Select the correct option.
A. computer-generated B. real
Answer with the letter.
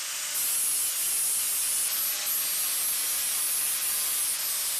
B